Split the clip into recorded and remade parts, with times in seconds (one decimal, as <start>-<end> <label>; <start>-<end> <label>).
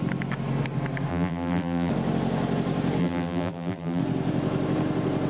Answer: 0.0-1.1 recorded; 1.1-1.9 remade; 1.9-3.0 recorded; 3.0-4.0 remade; 4.0-5.3 recorded